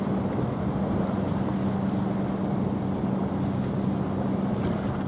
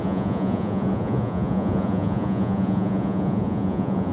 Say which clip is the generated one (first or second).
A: second